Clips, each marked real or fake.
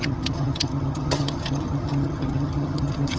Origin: fake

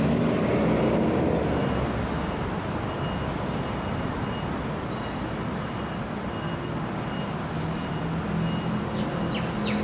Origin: real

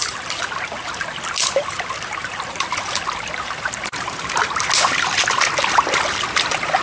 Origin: real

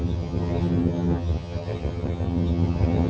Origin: fake